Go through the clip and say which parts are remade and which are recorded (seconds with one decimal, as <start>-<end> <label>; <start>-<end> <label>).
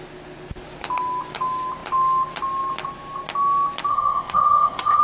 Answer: 0.0-3.9 recorded; 3.9-5.0 remade